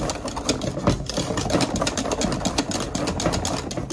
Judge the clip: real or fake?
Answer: real